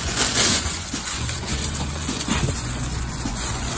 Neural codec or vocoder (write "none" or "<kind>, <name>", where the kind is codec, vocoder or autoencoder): vocoder, Vocos